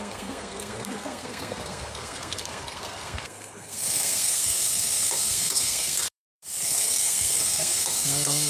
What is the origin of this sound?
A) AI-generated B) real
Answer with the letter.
A